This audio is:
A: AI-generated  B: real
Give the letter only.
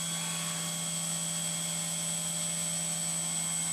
B